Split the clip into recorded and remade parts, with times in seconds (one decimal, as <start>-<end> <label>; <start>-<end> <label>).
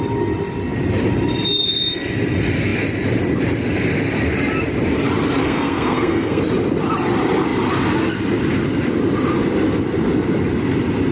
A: 0.0-5.4 recorded; 5.4-6.4 remade; 6.4-11.1 recorded